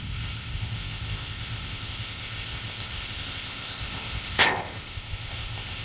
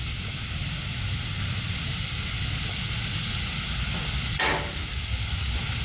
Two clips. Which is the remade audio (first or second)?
first